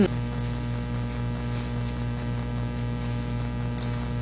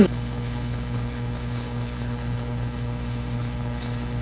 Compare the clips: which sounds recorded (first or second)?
first